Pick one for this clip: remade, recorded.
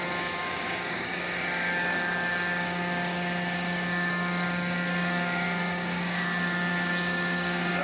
remade